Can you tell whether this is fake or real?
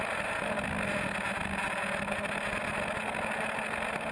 real